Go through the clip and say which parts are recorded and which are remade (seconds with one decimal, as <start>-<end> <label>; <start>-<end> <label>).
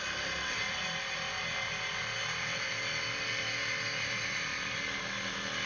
0.0-5.7 recorded